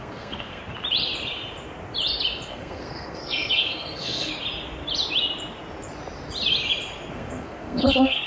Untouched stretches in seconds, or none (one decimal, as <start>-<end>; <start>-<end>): 0.6-2.5; 4.3-7.1